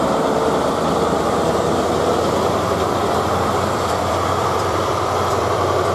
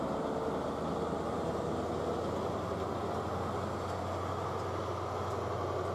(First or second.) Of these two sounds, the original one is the second